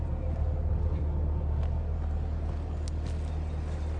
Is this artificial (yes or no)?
no